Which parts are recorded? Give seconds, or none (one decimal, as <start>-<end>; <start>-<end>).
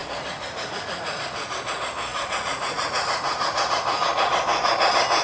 1.2-2.1; 4.0-5.2